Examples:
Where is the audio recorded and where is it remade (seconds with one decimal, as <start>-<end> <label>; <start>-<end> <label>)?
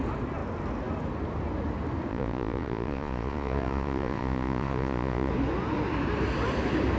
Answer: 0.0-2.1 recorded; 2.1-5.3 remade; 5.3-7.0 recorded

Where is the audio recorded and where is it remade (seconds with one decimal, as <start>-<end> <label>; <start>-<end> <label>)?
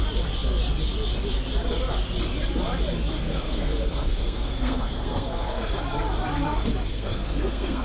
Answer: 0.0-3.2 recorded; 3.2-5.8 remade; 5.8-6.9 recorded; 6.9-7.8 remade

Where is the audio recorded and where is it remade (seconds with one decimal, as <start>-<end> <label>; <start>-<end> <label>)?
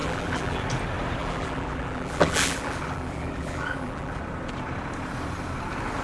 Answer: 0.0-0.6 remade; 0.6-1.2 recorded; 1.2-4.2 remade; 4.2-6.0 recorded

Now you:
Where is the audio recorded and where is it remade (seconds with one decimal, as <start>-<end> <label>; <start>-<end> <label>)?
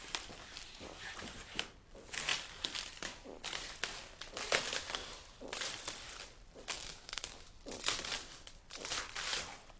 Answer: 0.0-6.7 recorded; 6.7-7.3 remade; 7.3-9.8 recorded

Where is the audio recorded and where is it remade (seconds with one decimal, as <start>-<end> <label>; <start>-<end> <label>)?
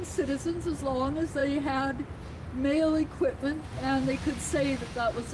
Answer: 0.0-5.3 recorded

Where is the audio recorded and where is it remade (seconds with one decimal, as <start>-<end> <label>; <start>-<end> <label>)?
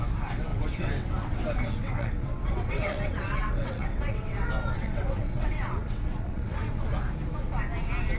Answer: 0.0-0.5 recorded; 0.5-1.4 remade; 1.4-1.8 recorded; 1.8-6.7 remade; 6.7-8.2 recorded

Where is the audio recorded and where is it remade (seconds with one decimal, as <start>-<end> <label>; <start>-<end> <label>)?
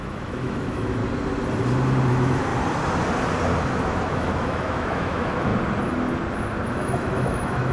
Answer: 0.0-1.0 remade; 1.0-2.1 recorded; 2.1-2.5 remade; 2.5-3.7 recorded; 3.7-5.5 remade; 5.5-6.7 recorded; 6.7-7.7 remade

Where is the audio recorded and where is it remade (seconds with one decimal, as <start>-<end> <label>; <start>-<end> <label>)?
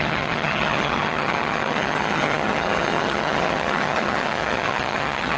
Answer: 0.0-5.4 remade